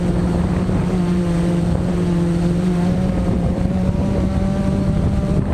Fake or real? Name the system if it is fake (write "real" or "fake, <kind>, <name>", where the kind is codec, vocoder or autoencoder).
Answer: fake, vocoder, BigVGAN v2